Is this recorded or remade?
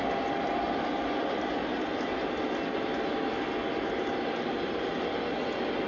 recorded